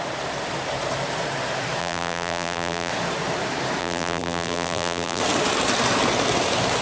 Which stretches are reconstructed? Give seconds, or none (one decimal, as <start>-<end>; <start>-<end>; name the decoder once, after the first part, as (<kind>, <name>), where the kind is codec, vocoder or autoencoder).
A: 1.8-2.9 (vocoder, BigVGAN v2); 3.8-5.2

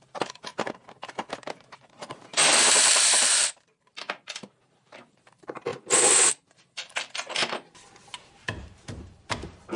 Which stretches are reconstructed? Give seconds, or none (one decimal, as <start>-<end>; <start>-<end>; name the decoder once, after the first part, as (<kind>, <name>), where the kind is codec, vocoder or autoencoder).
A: 0.0-0.5 (vocoder, BigVGAN v2); 1.3-5.7; 6.3-7.4; 8.0-9.8

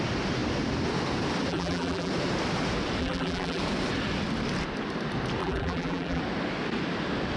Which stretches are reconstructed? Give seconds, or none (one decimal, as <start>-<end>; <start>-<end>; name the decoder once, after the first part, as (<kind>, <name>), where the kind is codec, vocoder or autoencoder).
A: 1.5-2.1 (vocoder, BigVGAN v2); 3.0-3.6; 5.4-6.2

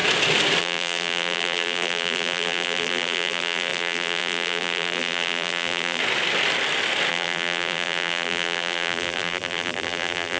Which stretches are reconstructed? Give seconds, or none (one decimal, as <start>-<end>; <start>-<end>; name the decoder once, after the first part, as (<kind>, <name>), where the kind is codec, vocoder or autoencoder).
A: 0.6-6.0 (vocoder, BigVGAN v2); 7.1-10.4